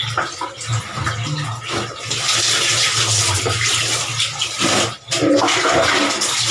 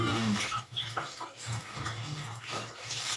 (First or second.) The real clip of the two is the first